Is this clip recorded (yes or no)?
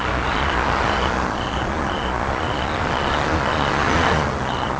no